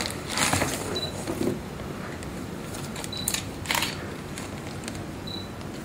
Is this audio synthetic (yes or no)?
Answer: no